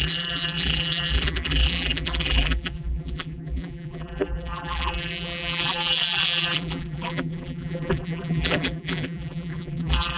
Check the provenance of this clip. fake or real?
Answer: fake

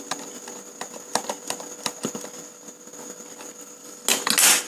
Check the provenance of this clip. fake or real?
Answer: real